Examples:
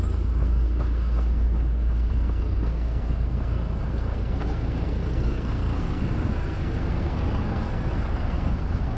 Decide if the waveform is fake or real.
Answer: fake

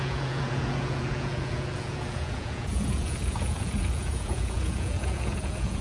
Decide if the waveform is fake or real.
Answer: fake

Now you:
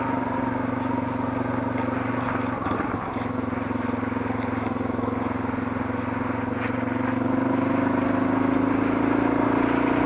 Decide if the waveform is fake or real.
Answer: real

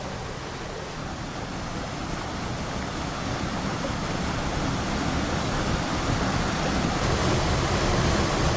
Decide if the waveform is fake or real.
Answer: real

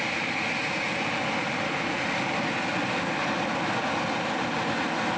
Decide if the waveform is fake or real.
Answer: real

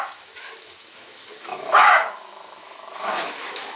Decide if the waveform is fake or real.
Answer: fake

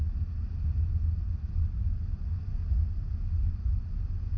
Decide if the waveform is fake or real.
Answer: real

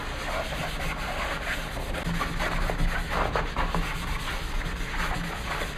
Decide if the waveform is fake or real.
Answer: real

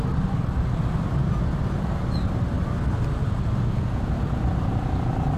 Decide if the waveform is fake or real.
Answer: real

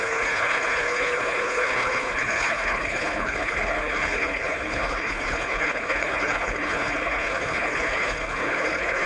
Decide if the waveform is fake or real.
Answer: fake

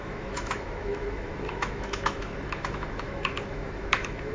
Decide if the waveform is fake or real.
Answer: fake